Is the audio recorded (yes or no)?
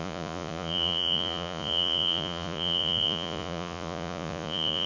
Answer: no